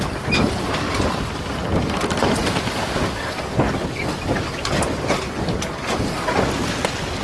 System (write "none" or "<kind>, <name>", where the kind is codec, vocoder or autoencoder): none